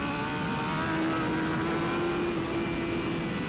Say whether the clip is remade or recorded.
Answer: recorded